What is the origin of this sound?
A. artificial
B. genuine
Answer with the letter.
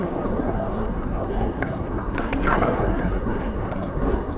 A